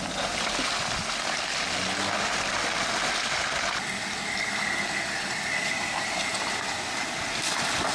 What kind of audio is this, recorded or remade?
recorded